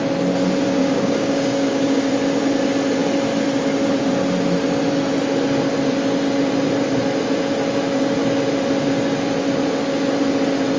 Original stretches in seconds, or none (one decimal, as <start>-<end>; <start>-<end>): 0.0-0.8; 2.1-10.8